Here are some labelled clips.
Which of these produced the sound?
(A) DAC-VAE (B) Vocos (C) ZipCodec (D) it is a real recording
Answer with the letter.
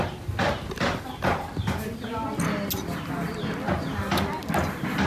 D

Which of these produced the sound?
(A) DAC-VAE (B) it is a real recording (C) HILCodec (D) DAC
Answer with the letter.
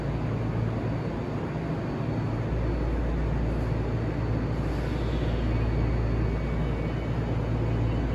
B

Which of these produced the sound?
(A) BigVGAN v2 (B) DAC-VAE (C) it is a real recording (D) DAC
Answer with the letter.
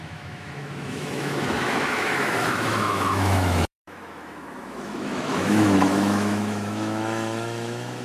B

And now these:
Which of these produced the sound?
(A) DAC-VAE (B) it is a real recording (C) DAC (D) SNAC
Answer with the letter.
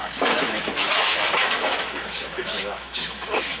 A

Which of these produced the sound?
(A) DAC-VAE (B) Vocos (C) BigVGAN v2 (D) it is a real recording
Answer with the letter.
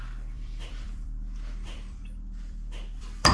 C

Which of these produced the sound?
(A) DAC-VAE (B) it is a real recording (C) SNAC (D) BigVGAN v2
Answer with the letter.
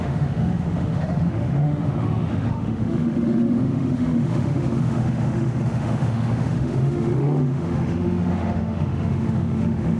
A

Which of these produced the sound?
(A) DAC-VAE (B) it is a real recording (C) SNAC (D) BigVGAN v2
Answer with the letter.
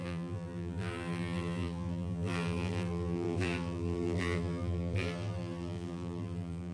D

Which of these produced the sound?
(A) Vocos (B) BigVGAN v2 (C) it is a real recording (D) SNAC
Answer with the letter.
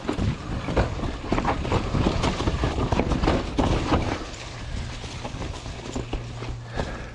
C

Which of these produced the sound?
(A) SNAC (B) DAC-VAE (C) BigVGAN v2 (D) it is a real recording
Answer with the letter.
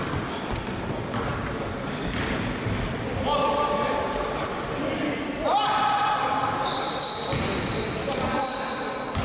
D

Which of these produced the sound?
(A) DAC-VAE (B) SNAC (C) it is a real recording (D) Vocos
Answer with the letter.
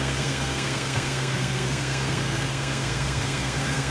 B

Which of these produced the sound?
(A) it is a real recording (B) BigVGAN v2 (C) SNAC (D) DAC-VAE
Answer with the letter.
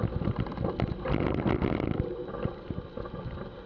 A